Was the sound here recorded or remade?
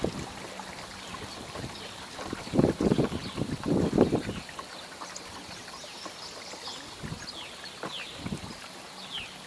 recorded